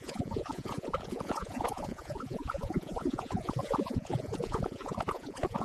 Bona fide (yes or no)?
no